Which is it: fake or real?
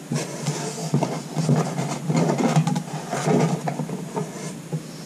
real